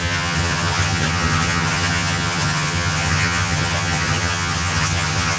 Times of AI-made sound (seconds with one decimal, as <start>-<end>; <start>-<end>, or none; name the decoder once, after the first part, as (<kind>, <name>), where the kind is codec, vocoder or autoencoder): 0.0-5.4 (vocoder, HiFi-GAN)